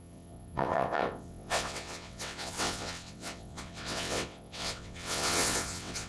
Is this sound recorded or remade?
remade